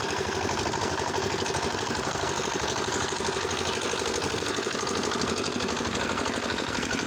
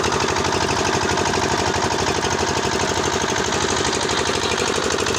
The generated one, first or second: first